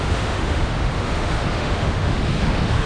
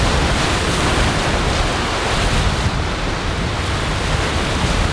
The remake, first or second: first